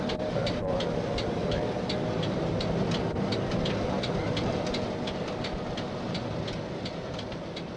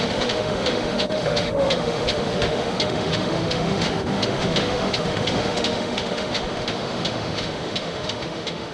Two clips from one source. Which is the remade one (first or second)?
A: second